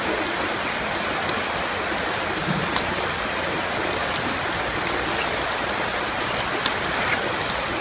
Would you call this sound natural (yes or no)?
yes